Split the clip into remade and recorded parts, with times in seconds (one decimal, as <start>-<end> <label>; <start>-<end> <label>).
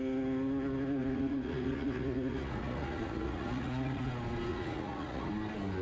0.0-1.0 recorded; 1.0-4.1 remade; 4.1-4.5 recorded; 4.5-5.3 remade; 5.3-5.8 recorded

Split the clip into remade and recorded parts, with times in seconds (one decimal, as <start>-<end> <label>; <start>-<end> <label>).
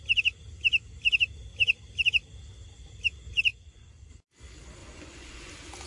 0.0-3.5 recorded; 3.5-4.1 remade; 4.1-4.8 recorded; 4.8-5.5 remade; 5.5-5.9 recorded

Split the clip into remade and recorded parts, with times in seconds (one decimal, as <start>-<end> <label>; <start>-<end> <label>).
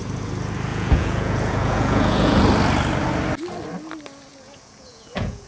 0.0-0.7 recorded; 0.7-2.4 remade; 2.4-4.3 recorded; 4.3-5.5 remade